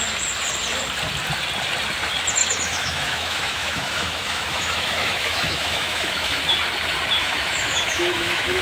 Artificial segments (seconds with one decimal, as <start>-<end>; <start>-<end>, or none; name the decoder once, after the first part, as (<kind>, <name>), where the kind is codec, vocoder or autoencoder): 2.4-6.4 (autoencoder, DAC-VAE); 7.2-8.6